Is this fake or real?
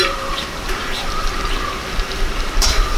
fake